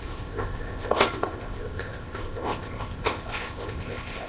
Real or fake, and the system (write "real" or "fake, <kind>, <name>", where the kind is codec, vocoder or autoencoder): fake, codec, ZipCodec